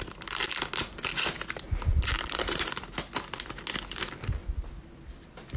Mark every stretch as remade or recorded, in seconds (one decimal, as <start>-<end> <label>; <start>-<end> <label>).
0.0-4.4 recorded; 4.4-4.9 remade; 4.9-5.6 recorded